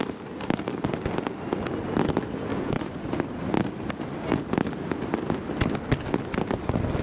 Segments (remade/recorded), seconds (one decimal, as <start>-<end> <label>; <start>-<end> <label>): 0.0-2.5 recorded; 2.5-3.1 remade; 3.1-7.0 recorded